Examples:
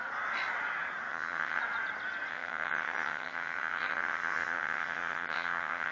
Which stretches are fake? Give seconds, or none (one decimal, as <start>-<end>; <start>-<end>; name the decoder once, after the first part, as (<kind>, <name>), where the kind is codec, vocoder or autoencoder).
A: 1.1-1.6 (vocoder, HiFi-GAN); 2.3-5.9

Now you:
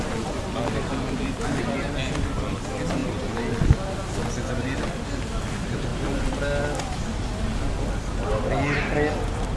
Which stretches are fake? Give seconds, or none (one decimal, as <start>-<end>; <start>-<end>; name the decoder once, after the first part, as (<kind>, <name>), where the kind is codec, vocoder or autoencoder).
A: none

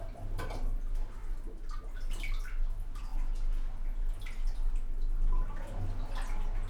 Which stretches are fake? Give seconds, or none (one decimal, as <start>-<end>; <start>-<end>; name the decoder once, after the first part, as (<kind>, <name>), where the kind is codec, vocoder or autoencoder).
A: none

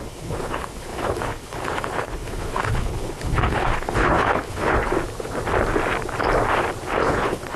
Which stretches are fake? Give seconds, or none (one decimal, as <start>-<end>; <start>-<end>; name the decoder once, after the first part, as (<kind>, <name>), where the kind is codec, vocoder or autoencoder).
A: 0.0-4.9 (codec, HILCodec); 7.0-7.6

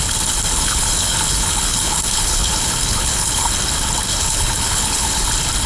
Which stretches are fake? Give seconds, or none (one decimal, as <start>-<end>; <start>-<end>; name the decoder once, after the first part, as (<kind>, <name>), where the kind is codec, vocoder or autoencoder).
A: 0.5-3.5 (codec, HILCodec); 4.1-5.3